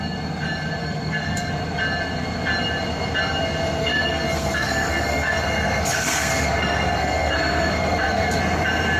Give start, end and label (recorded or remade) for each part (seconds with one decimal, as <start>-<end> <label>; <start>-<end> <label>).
0.0-0.8 recorded; 0.8-1.5 remade; 1.5-3.8 recorded; 3.8-8.4 remade; 8.4-9.0 recorded